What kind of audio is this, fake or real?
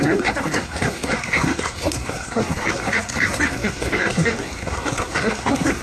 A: fake